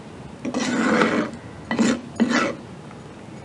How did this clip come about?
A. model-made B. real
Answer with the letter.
B